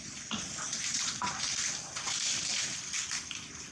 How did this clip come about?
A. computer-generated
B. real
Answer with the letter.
B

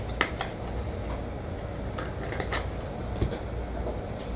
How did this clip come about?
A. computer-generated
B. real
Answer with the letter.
B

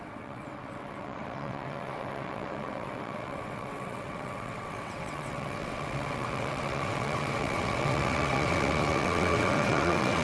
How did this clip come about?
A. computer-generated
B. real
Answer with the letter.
A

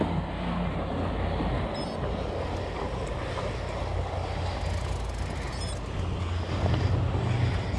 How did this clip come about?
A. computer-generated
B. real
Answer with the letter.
B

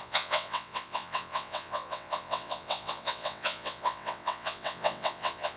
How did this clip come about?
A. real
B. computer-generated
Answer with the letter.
B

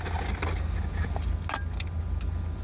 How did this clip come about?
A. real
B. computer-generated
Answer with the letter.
A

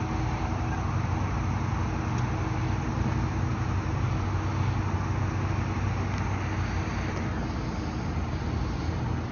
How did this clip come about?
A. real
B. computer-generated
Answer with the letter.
A